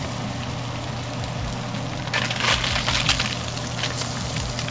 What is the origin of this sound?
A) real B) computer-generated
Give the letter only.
A